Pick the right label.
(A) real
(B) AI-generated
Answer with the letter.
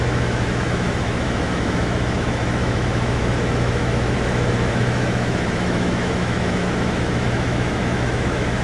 B